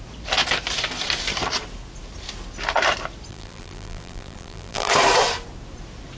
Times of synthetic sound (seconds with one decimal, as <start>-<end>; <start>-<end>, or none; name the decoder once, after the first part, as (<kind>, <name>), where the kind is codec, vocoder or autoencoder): 3.3-4.9 (vocoder, BigVGAN v2)